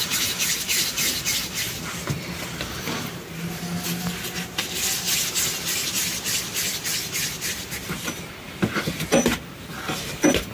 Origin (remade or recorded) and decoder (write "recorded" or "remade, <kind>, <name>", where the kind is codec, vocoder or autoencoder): recorded